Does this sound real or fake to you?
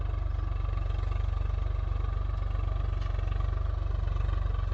real